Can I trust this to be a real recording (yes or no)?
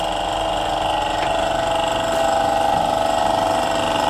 yes